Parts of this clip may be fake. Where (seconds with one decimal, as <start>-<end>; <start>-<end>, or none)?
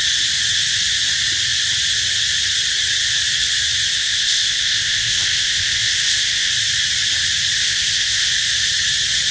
3.9-6.5; 7.6-8.3